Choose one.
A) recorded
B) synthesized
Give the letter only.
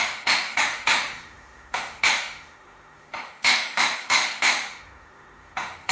B